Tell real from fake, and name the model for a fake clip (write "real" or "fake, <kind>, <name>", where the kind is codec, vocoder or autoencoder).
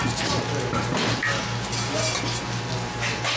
real